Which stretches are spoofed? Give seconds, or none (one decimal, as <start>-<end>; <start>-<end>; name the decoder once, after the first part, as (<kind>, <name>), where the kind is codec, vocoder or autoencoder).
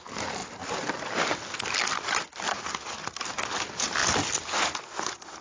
none